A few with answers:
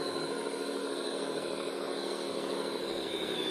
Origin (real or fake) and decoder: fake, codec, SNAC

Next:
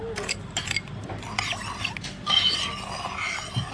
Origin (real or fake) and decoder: real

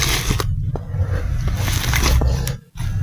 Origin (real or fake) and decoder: real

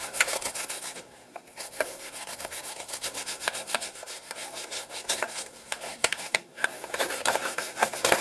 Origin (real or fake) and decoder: fake, codec, SNAC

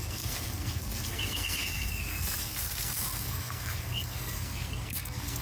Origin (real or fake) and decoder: fake, codec, SNAC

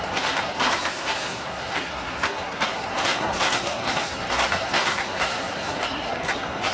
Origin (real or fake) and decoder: fake, codec, SNAC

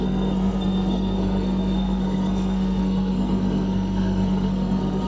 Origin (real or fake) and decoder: fake, codec, SNAC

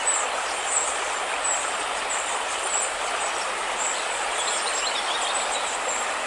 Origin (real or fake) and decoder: real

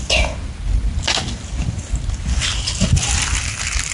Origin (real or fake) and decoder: real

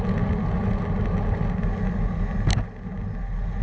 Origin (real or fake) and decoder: real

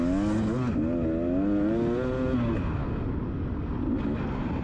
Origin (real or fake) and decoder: real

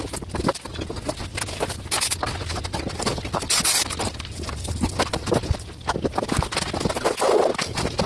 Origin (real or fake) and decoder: real